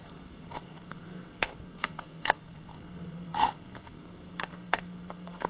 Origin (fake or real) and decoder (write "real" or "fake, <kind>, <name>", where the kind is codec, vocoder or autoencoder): fake, codec, SNAC